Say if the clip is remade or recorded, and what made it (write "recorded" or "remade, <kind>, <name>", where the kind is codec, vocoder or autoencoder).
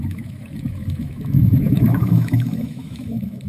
remade, autoencoder, DAC-VAE